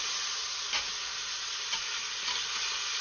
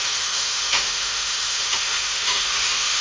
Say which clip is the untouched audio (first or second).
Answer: first